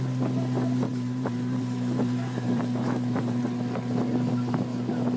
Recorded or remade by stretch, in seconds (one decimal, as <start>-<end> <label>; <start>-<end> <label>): 0.0-0.9 recorded; 0.9-3.4 remade; 3.4-5.2 recorded